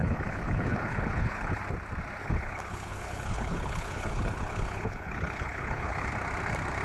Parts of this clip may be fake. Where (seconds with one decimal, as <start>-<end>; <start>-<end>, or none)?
0.0-1.6; 2.2-6.1